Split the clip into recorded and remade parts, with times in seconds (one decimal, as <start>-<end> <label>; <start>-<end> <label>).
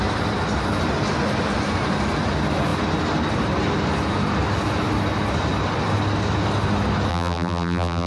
0.0-7.1 recorded; 7.1-8.1 remade